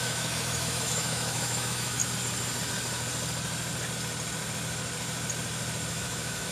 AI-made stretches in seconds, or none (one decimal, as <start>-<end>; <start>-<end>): 0.0-2.0; 5.9-6.5